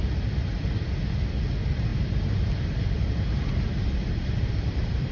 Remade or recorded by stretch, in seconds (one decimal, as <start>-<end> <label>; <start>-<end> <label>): 0.0-1.9 recorded; 1.9-5.1 remade